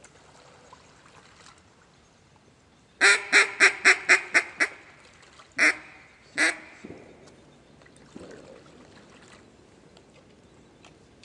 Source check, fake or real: real